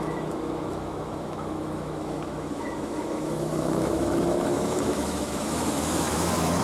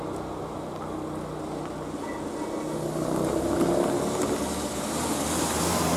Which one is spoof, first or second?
first